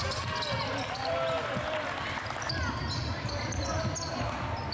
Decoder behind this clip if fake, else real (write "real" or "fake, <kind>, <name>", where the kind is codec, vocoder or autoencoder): real